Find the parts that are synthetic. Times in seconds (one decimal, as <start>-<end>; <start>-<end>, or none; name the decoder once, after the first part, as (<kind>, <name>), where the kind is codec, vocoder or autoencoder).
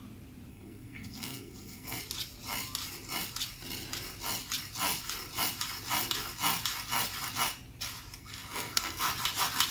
0.5-2.0 (codec, SNAC); 8.2-9.1